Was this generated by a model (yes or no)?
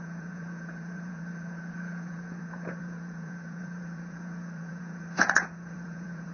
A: yes